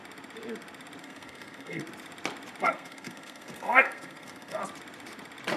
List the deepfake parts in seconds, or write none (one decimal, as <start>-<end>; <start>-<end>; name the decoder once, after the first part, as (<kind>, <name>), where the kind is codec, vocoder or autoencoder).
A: 1.0-1.8 (codec, SNAC); 2.6-4.6